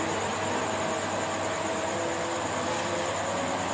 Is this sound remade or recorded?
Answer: recorded